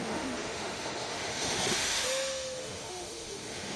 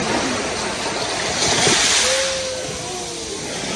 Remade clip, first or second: first